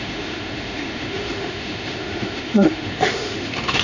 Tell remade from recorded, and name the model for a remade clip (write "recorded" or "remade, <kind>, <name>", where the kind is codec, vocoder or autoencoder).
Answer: remade, autoencoder, DAC-VAE